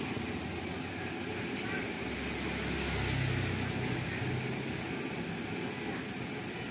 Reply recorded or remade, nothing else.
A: recorded